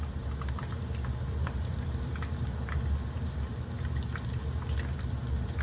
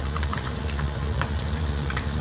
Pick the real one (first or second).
first